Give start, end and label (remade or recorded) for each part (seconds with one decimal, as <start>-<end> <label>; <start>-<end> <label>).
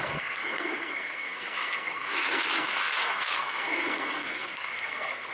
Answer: 0.0-5.3 remade